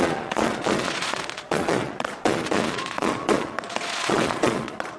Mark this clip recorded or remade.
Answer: remade